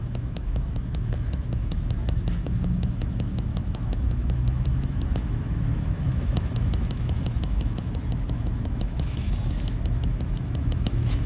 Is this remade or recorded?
remade